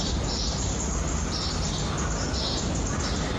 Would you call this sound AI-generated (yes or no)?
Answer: no